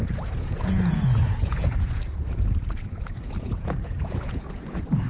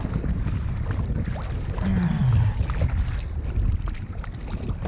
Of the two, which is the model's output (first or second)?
first